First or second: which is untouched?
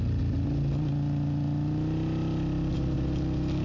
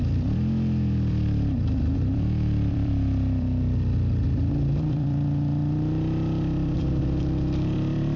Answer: first